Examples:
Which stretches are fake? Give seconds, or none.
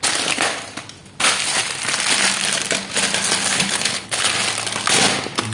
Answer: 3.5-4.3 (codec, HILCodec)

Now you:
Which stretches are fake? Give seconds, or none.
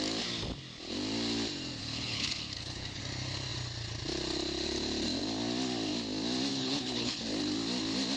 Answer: 1.8-3.0 (codec, HILCodec); 6.5-7.2